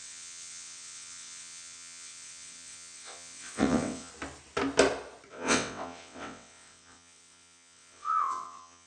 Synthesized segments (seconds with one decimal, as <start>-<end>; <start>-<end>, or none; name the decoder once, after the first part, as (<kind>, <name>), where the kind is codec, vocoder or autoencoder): 0.0-4.1 (vocoder, WaveNeXt); 5.3-8.9